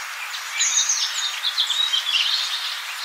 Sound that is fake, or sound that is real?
real